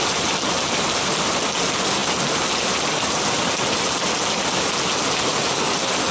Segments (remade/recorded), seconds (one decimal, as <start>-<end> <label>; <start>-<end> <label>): 0.0-6.1 recorded

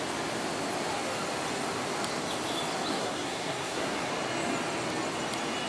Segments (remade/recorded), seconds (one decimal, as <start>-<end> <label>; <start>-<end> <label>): 0.0-2.9 recorded; 2.9-4.1 remade; 4.1-5.7 recorded